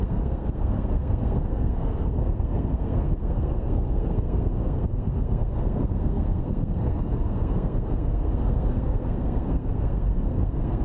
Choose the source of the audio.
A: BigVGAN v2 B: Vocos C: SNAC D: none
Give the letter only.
C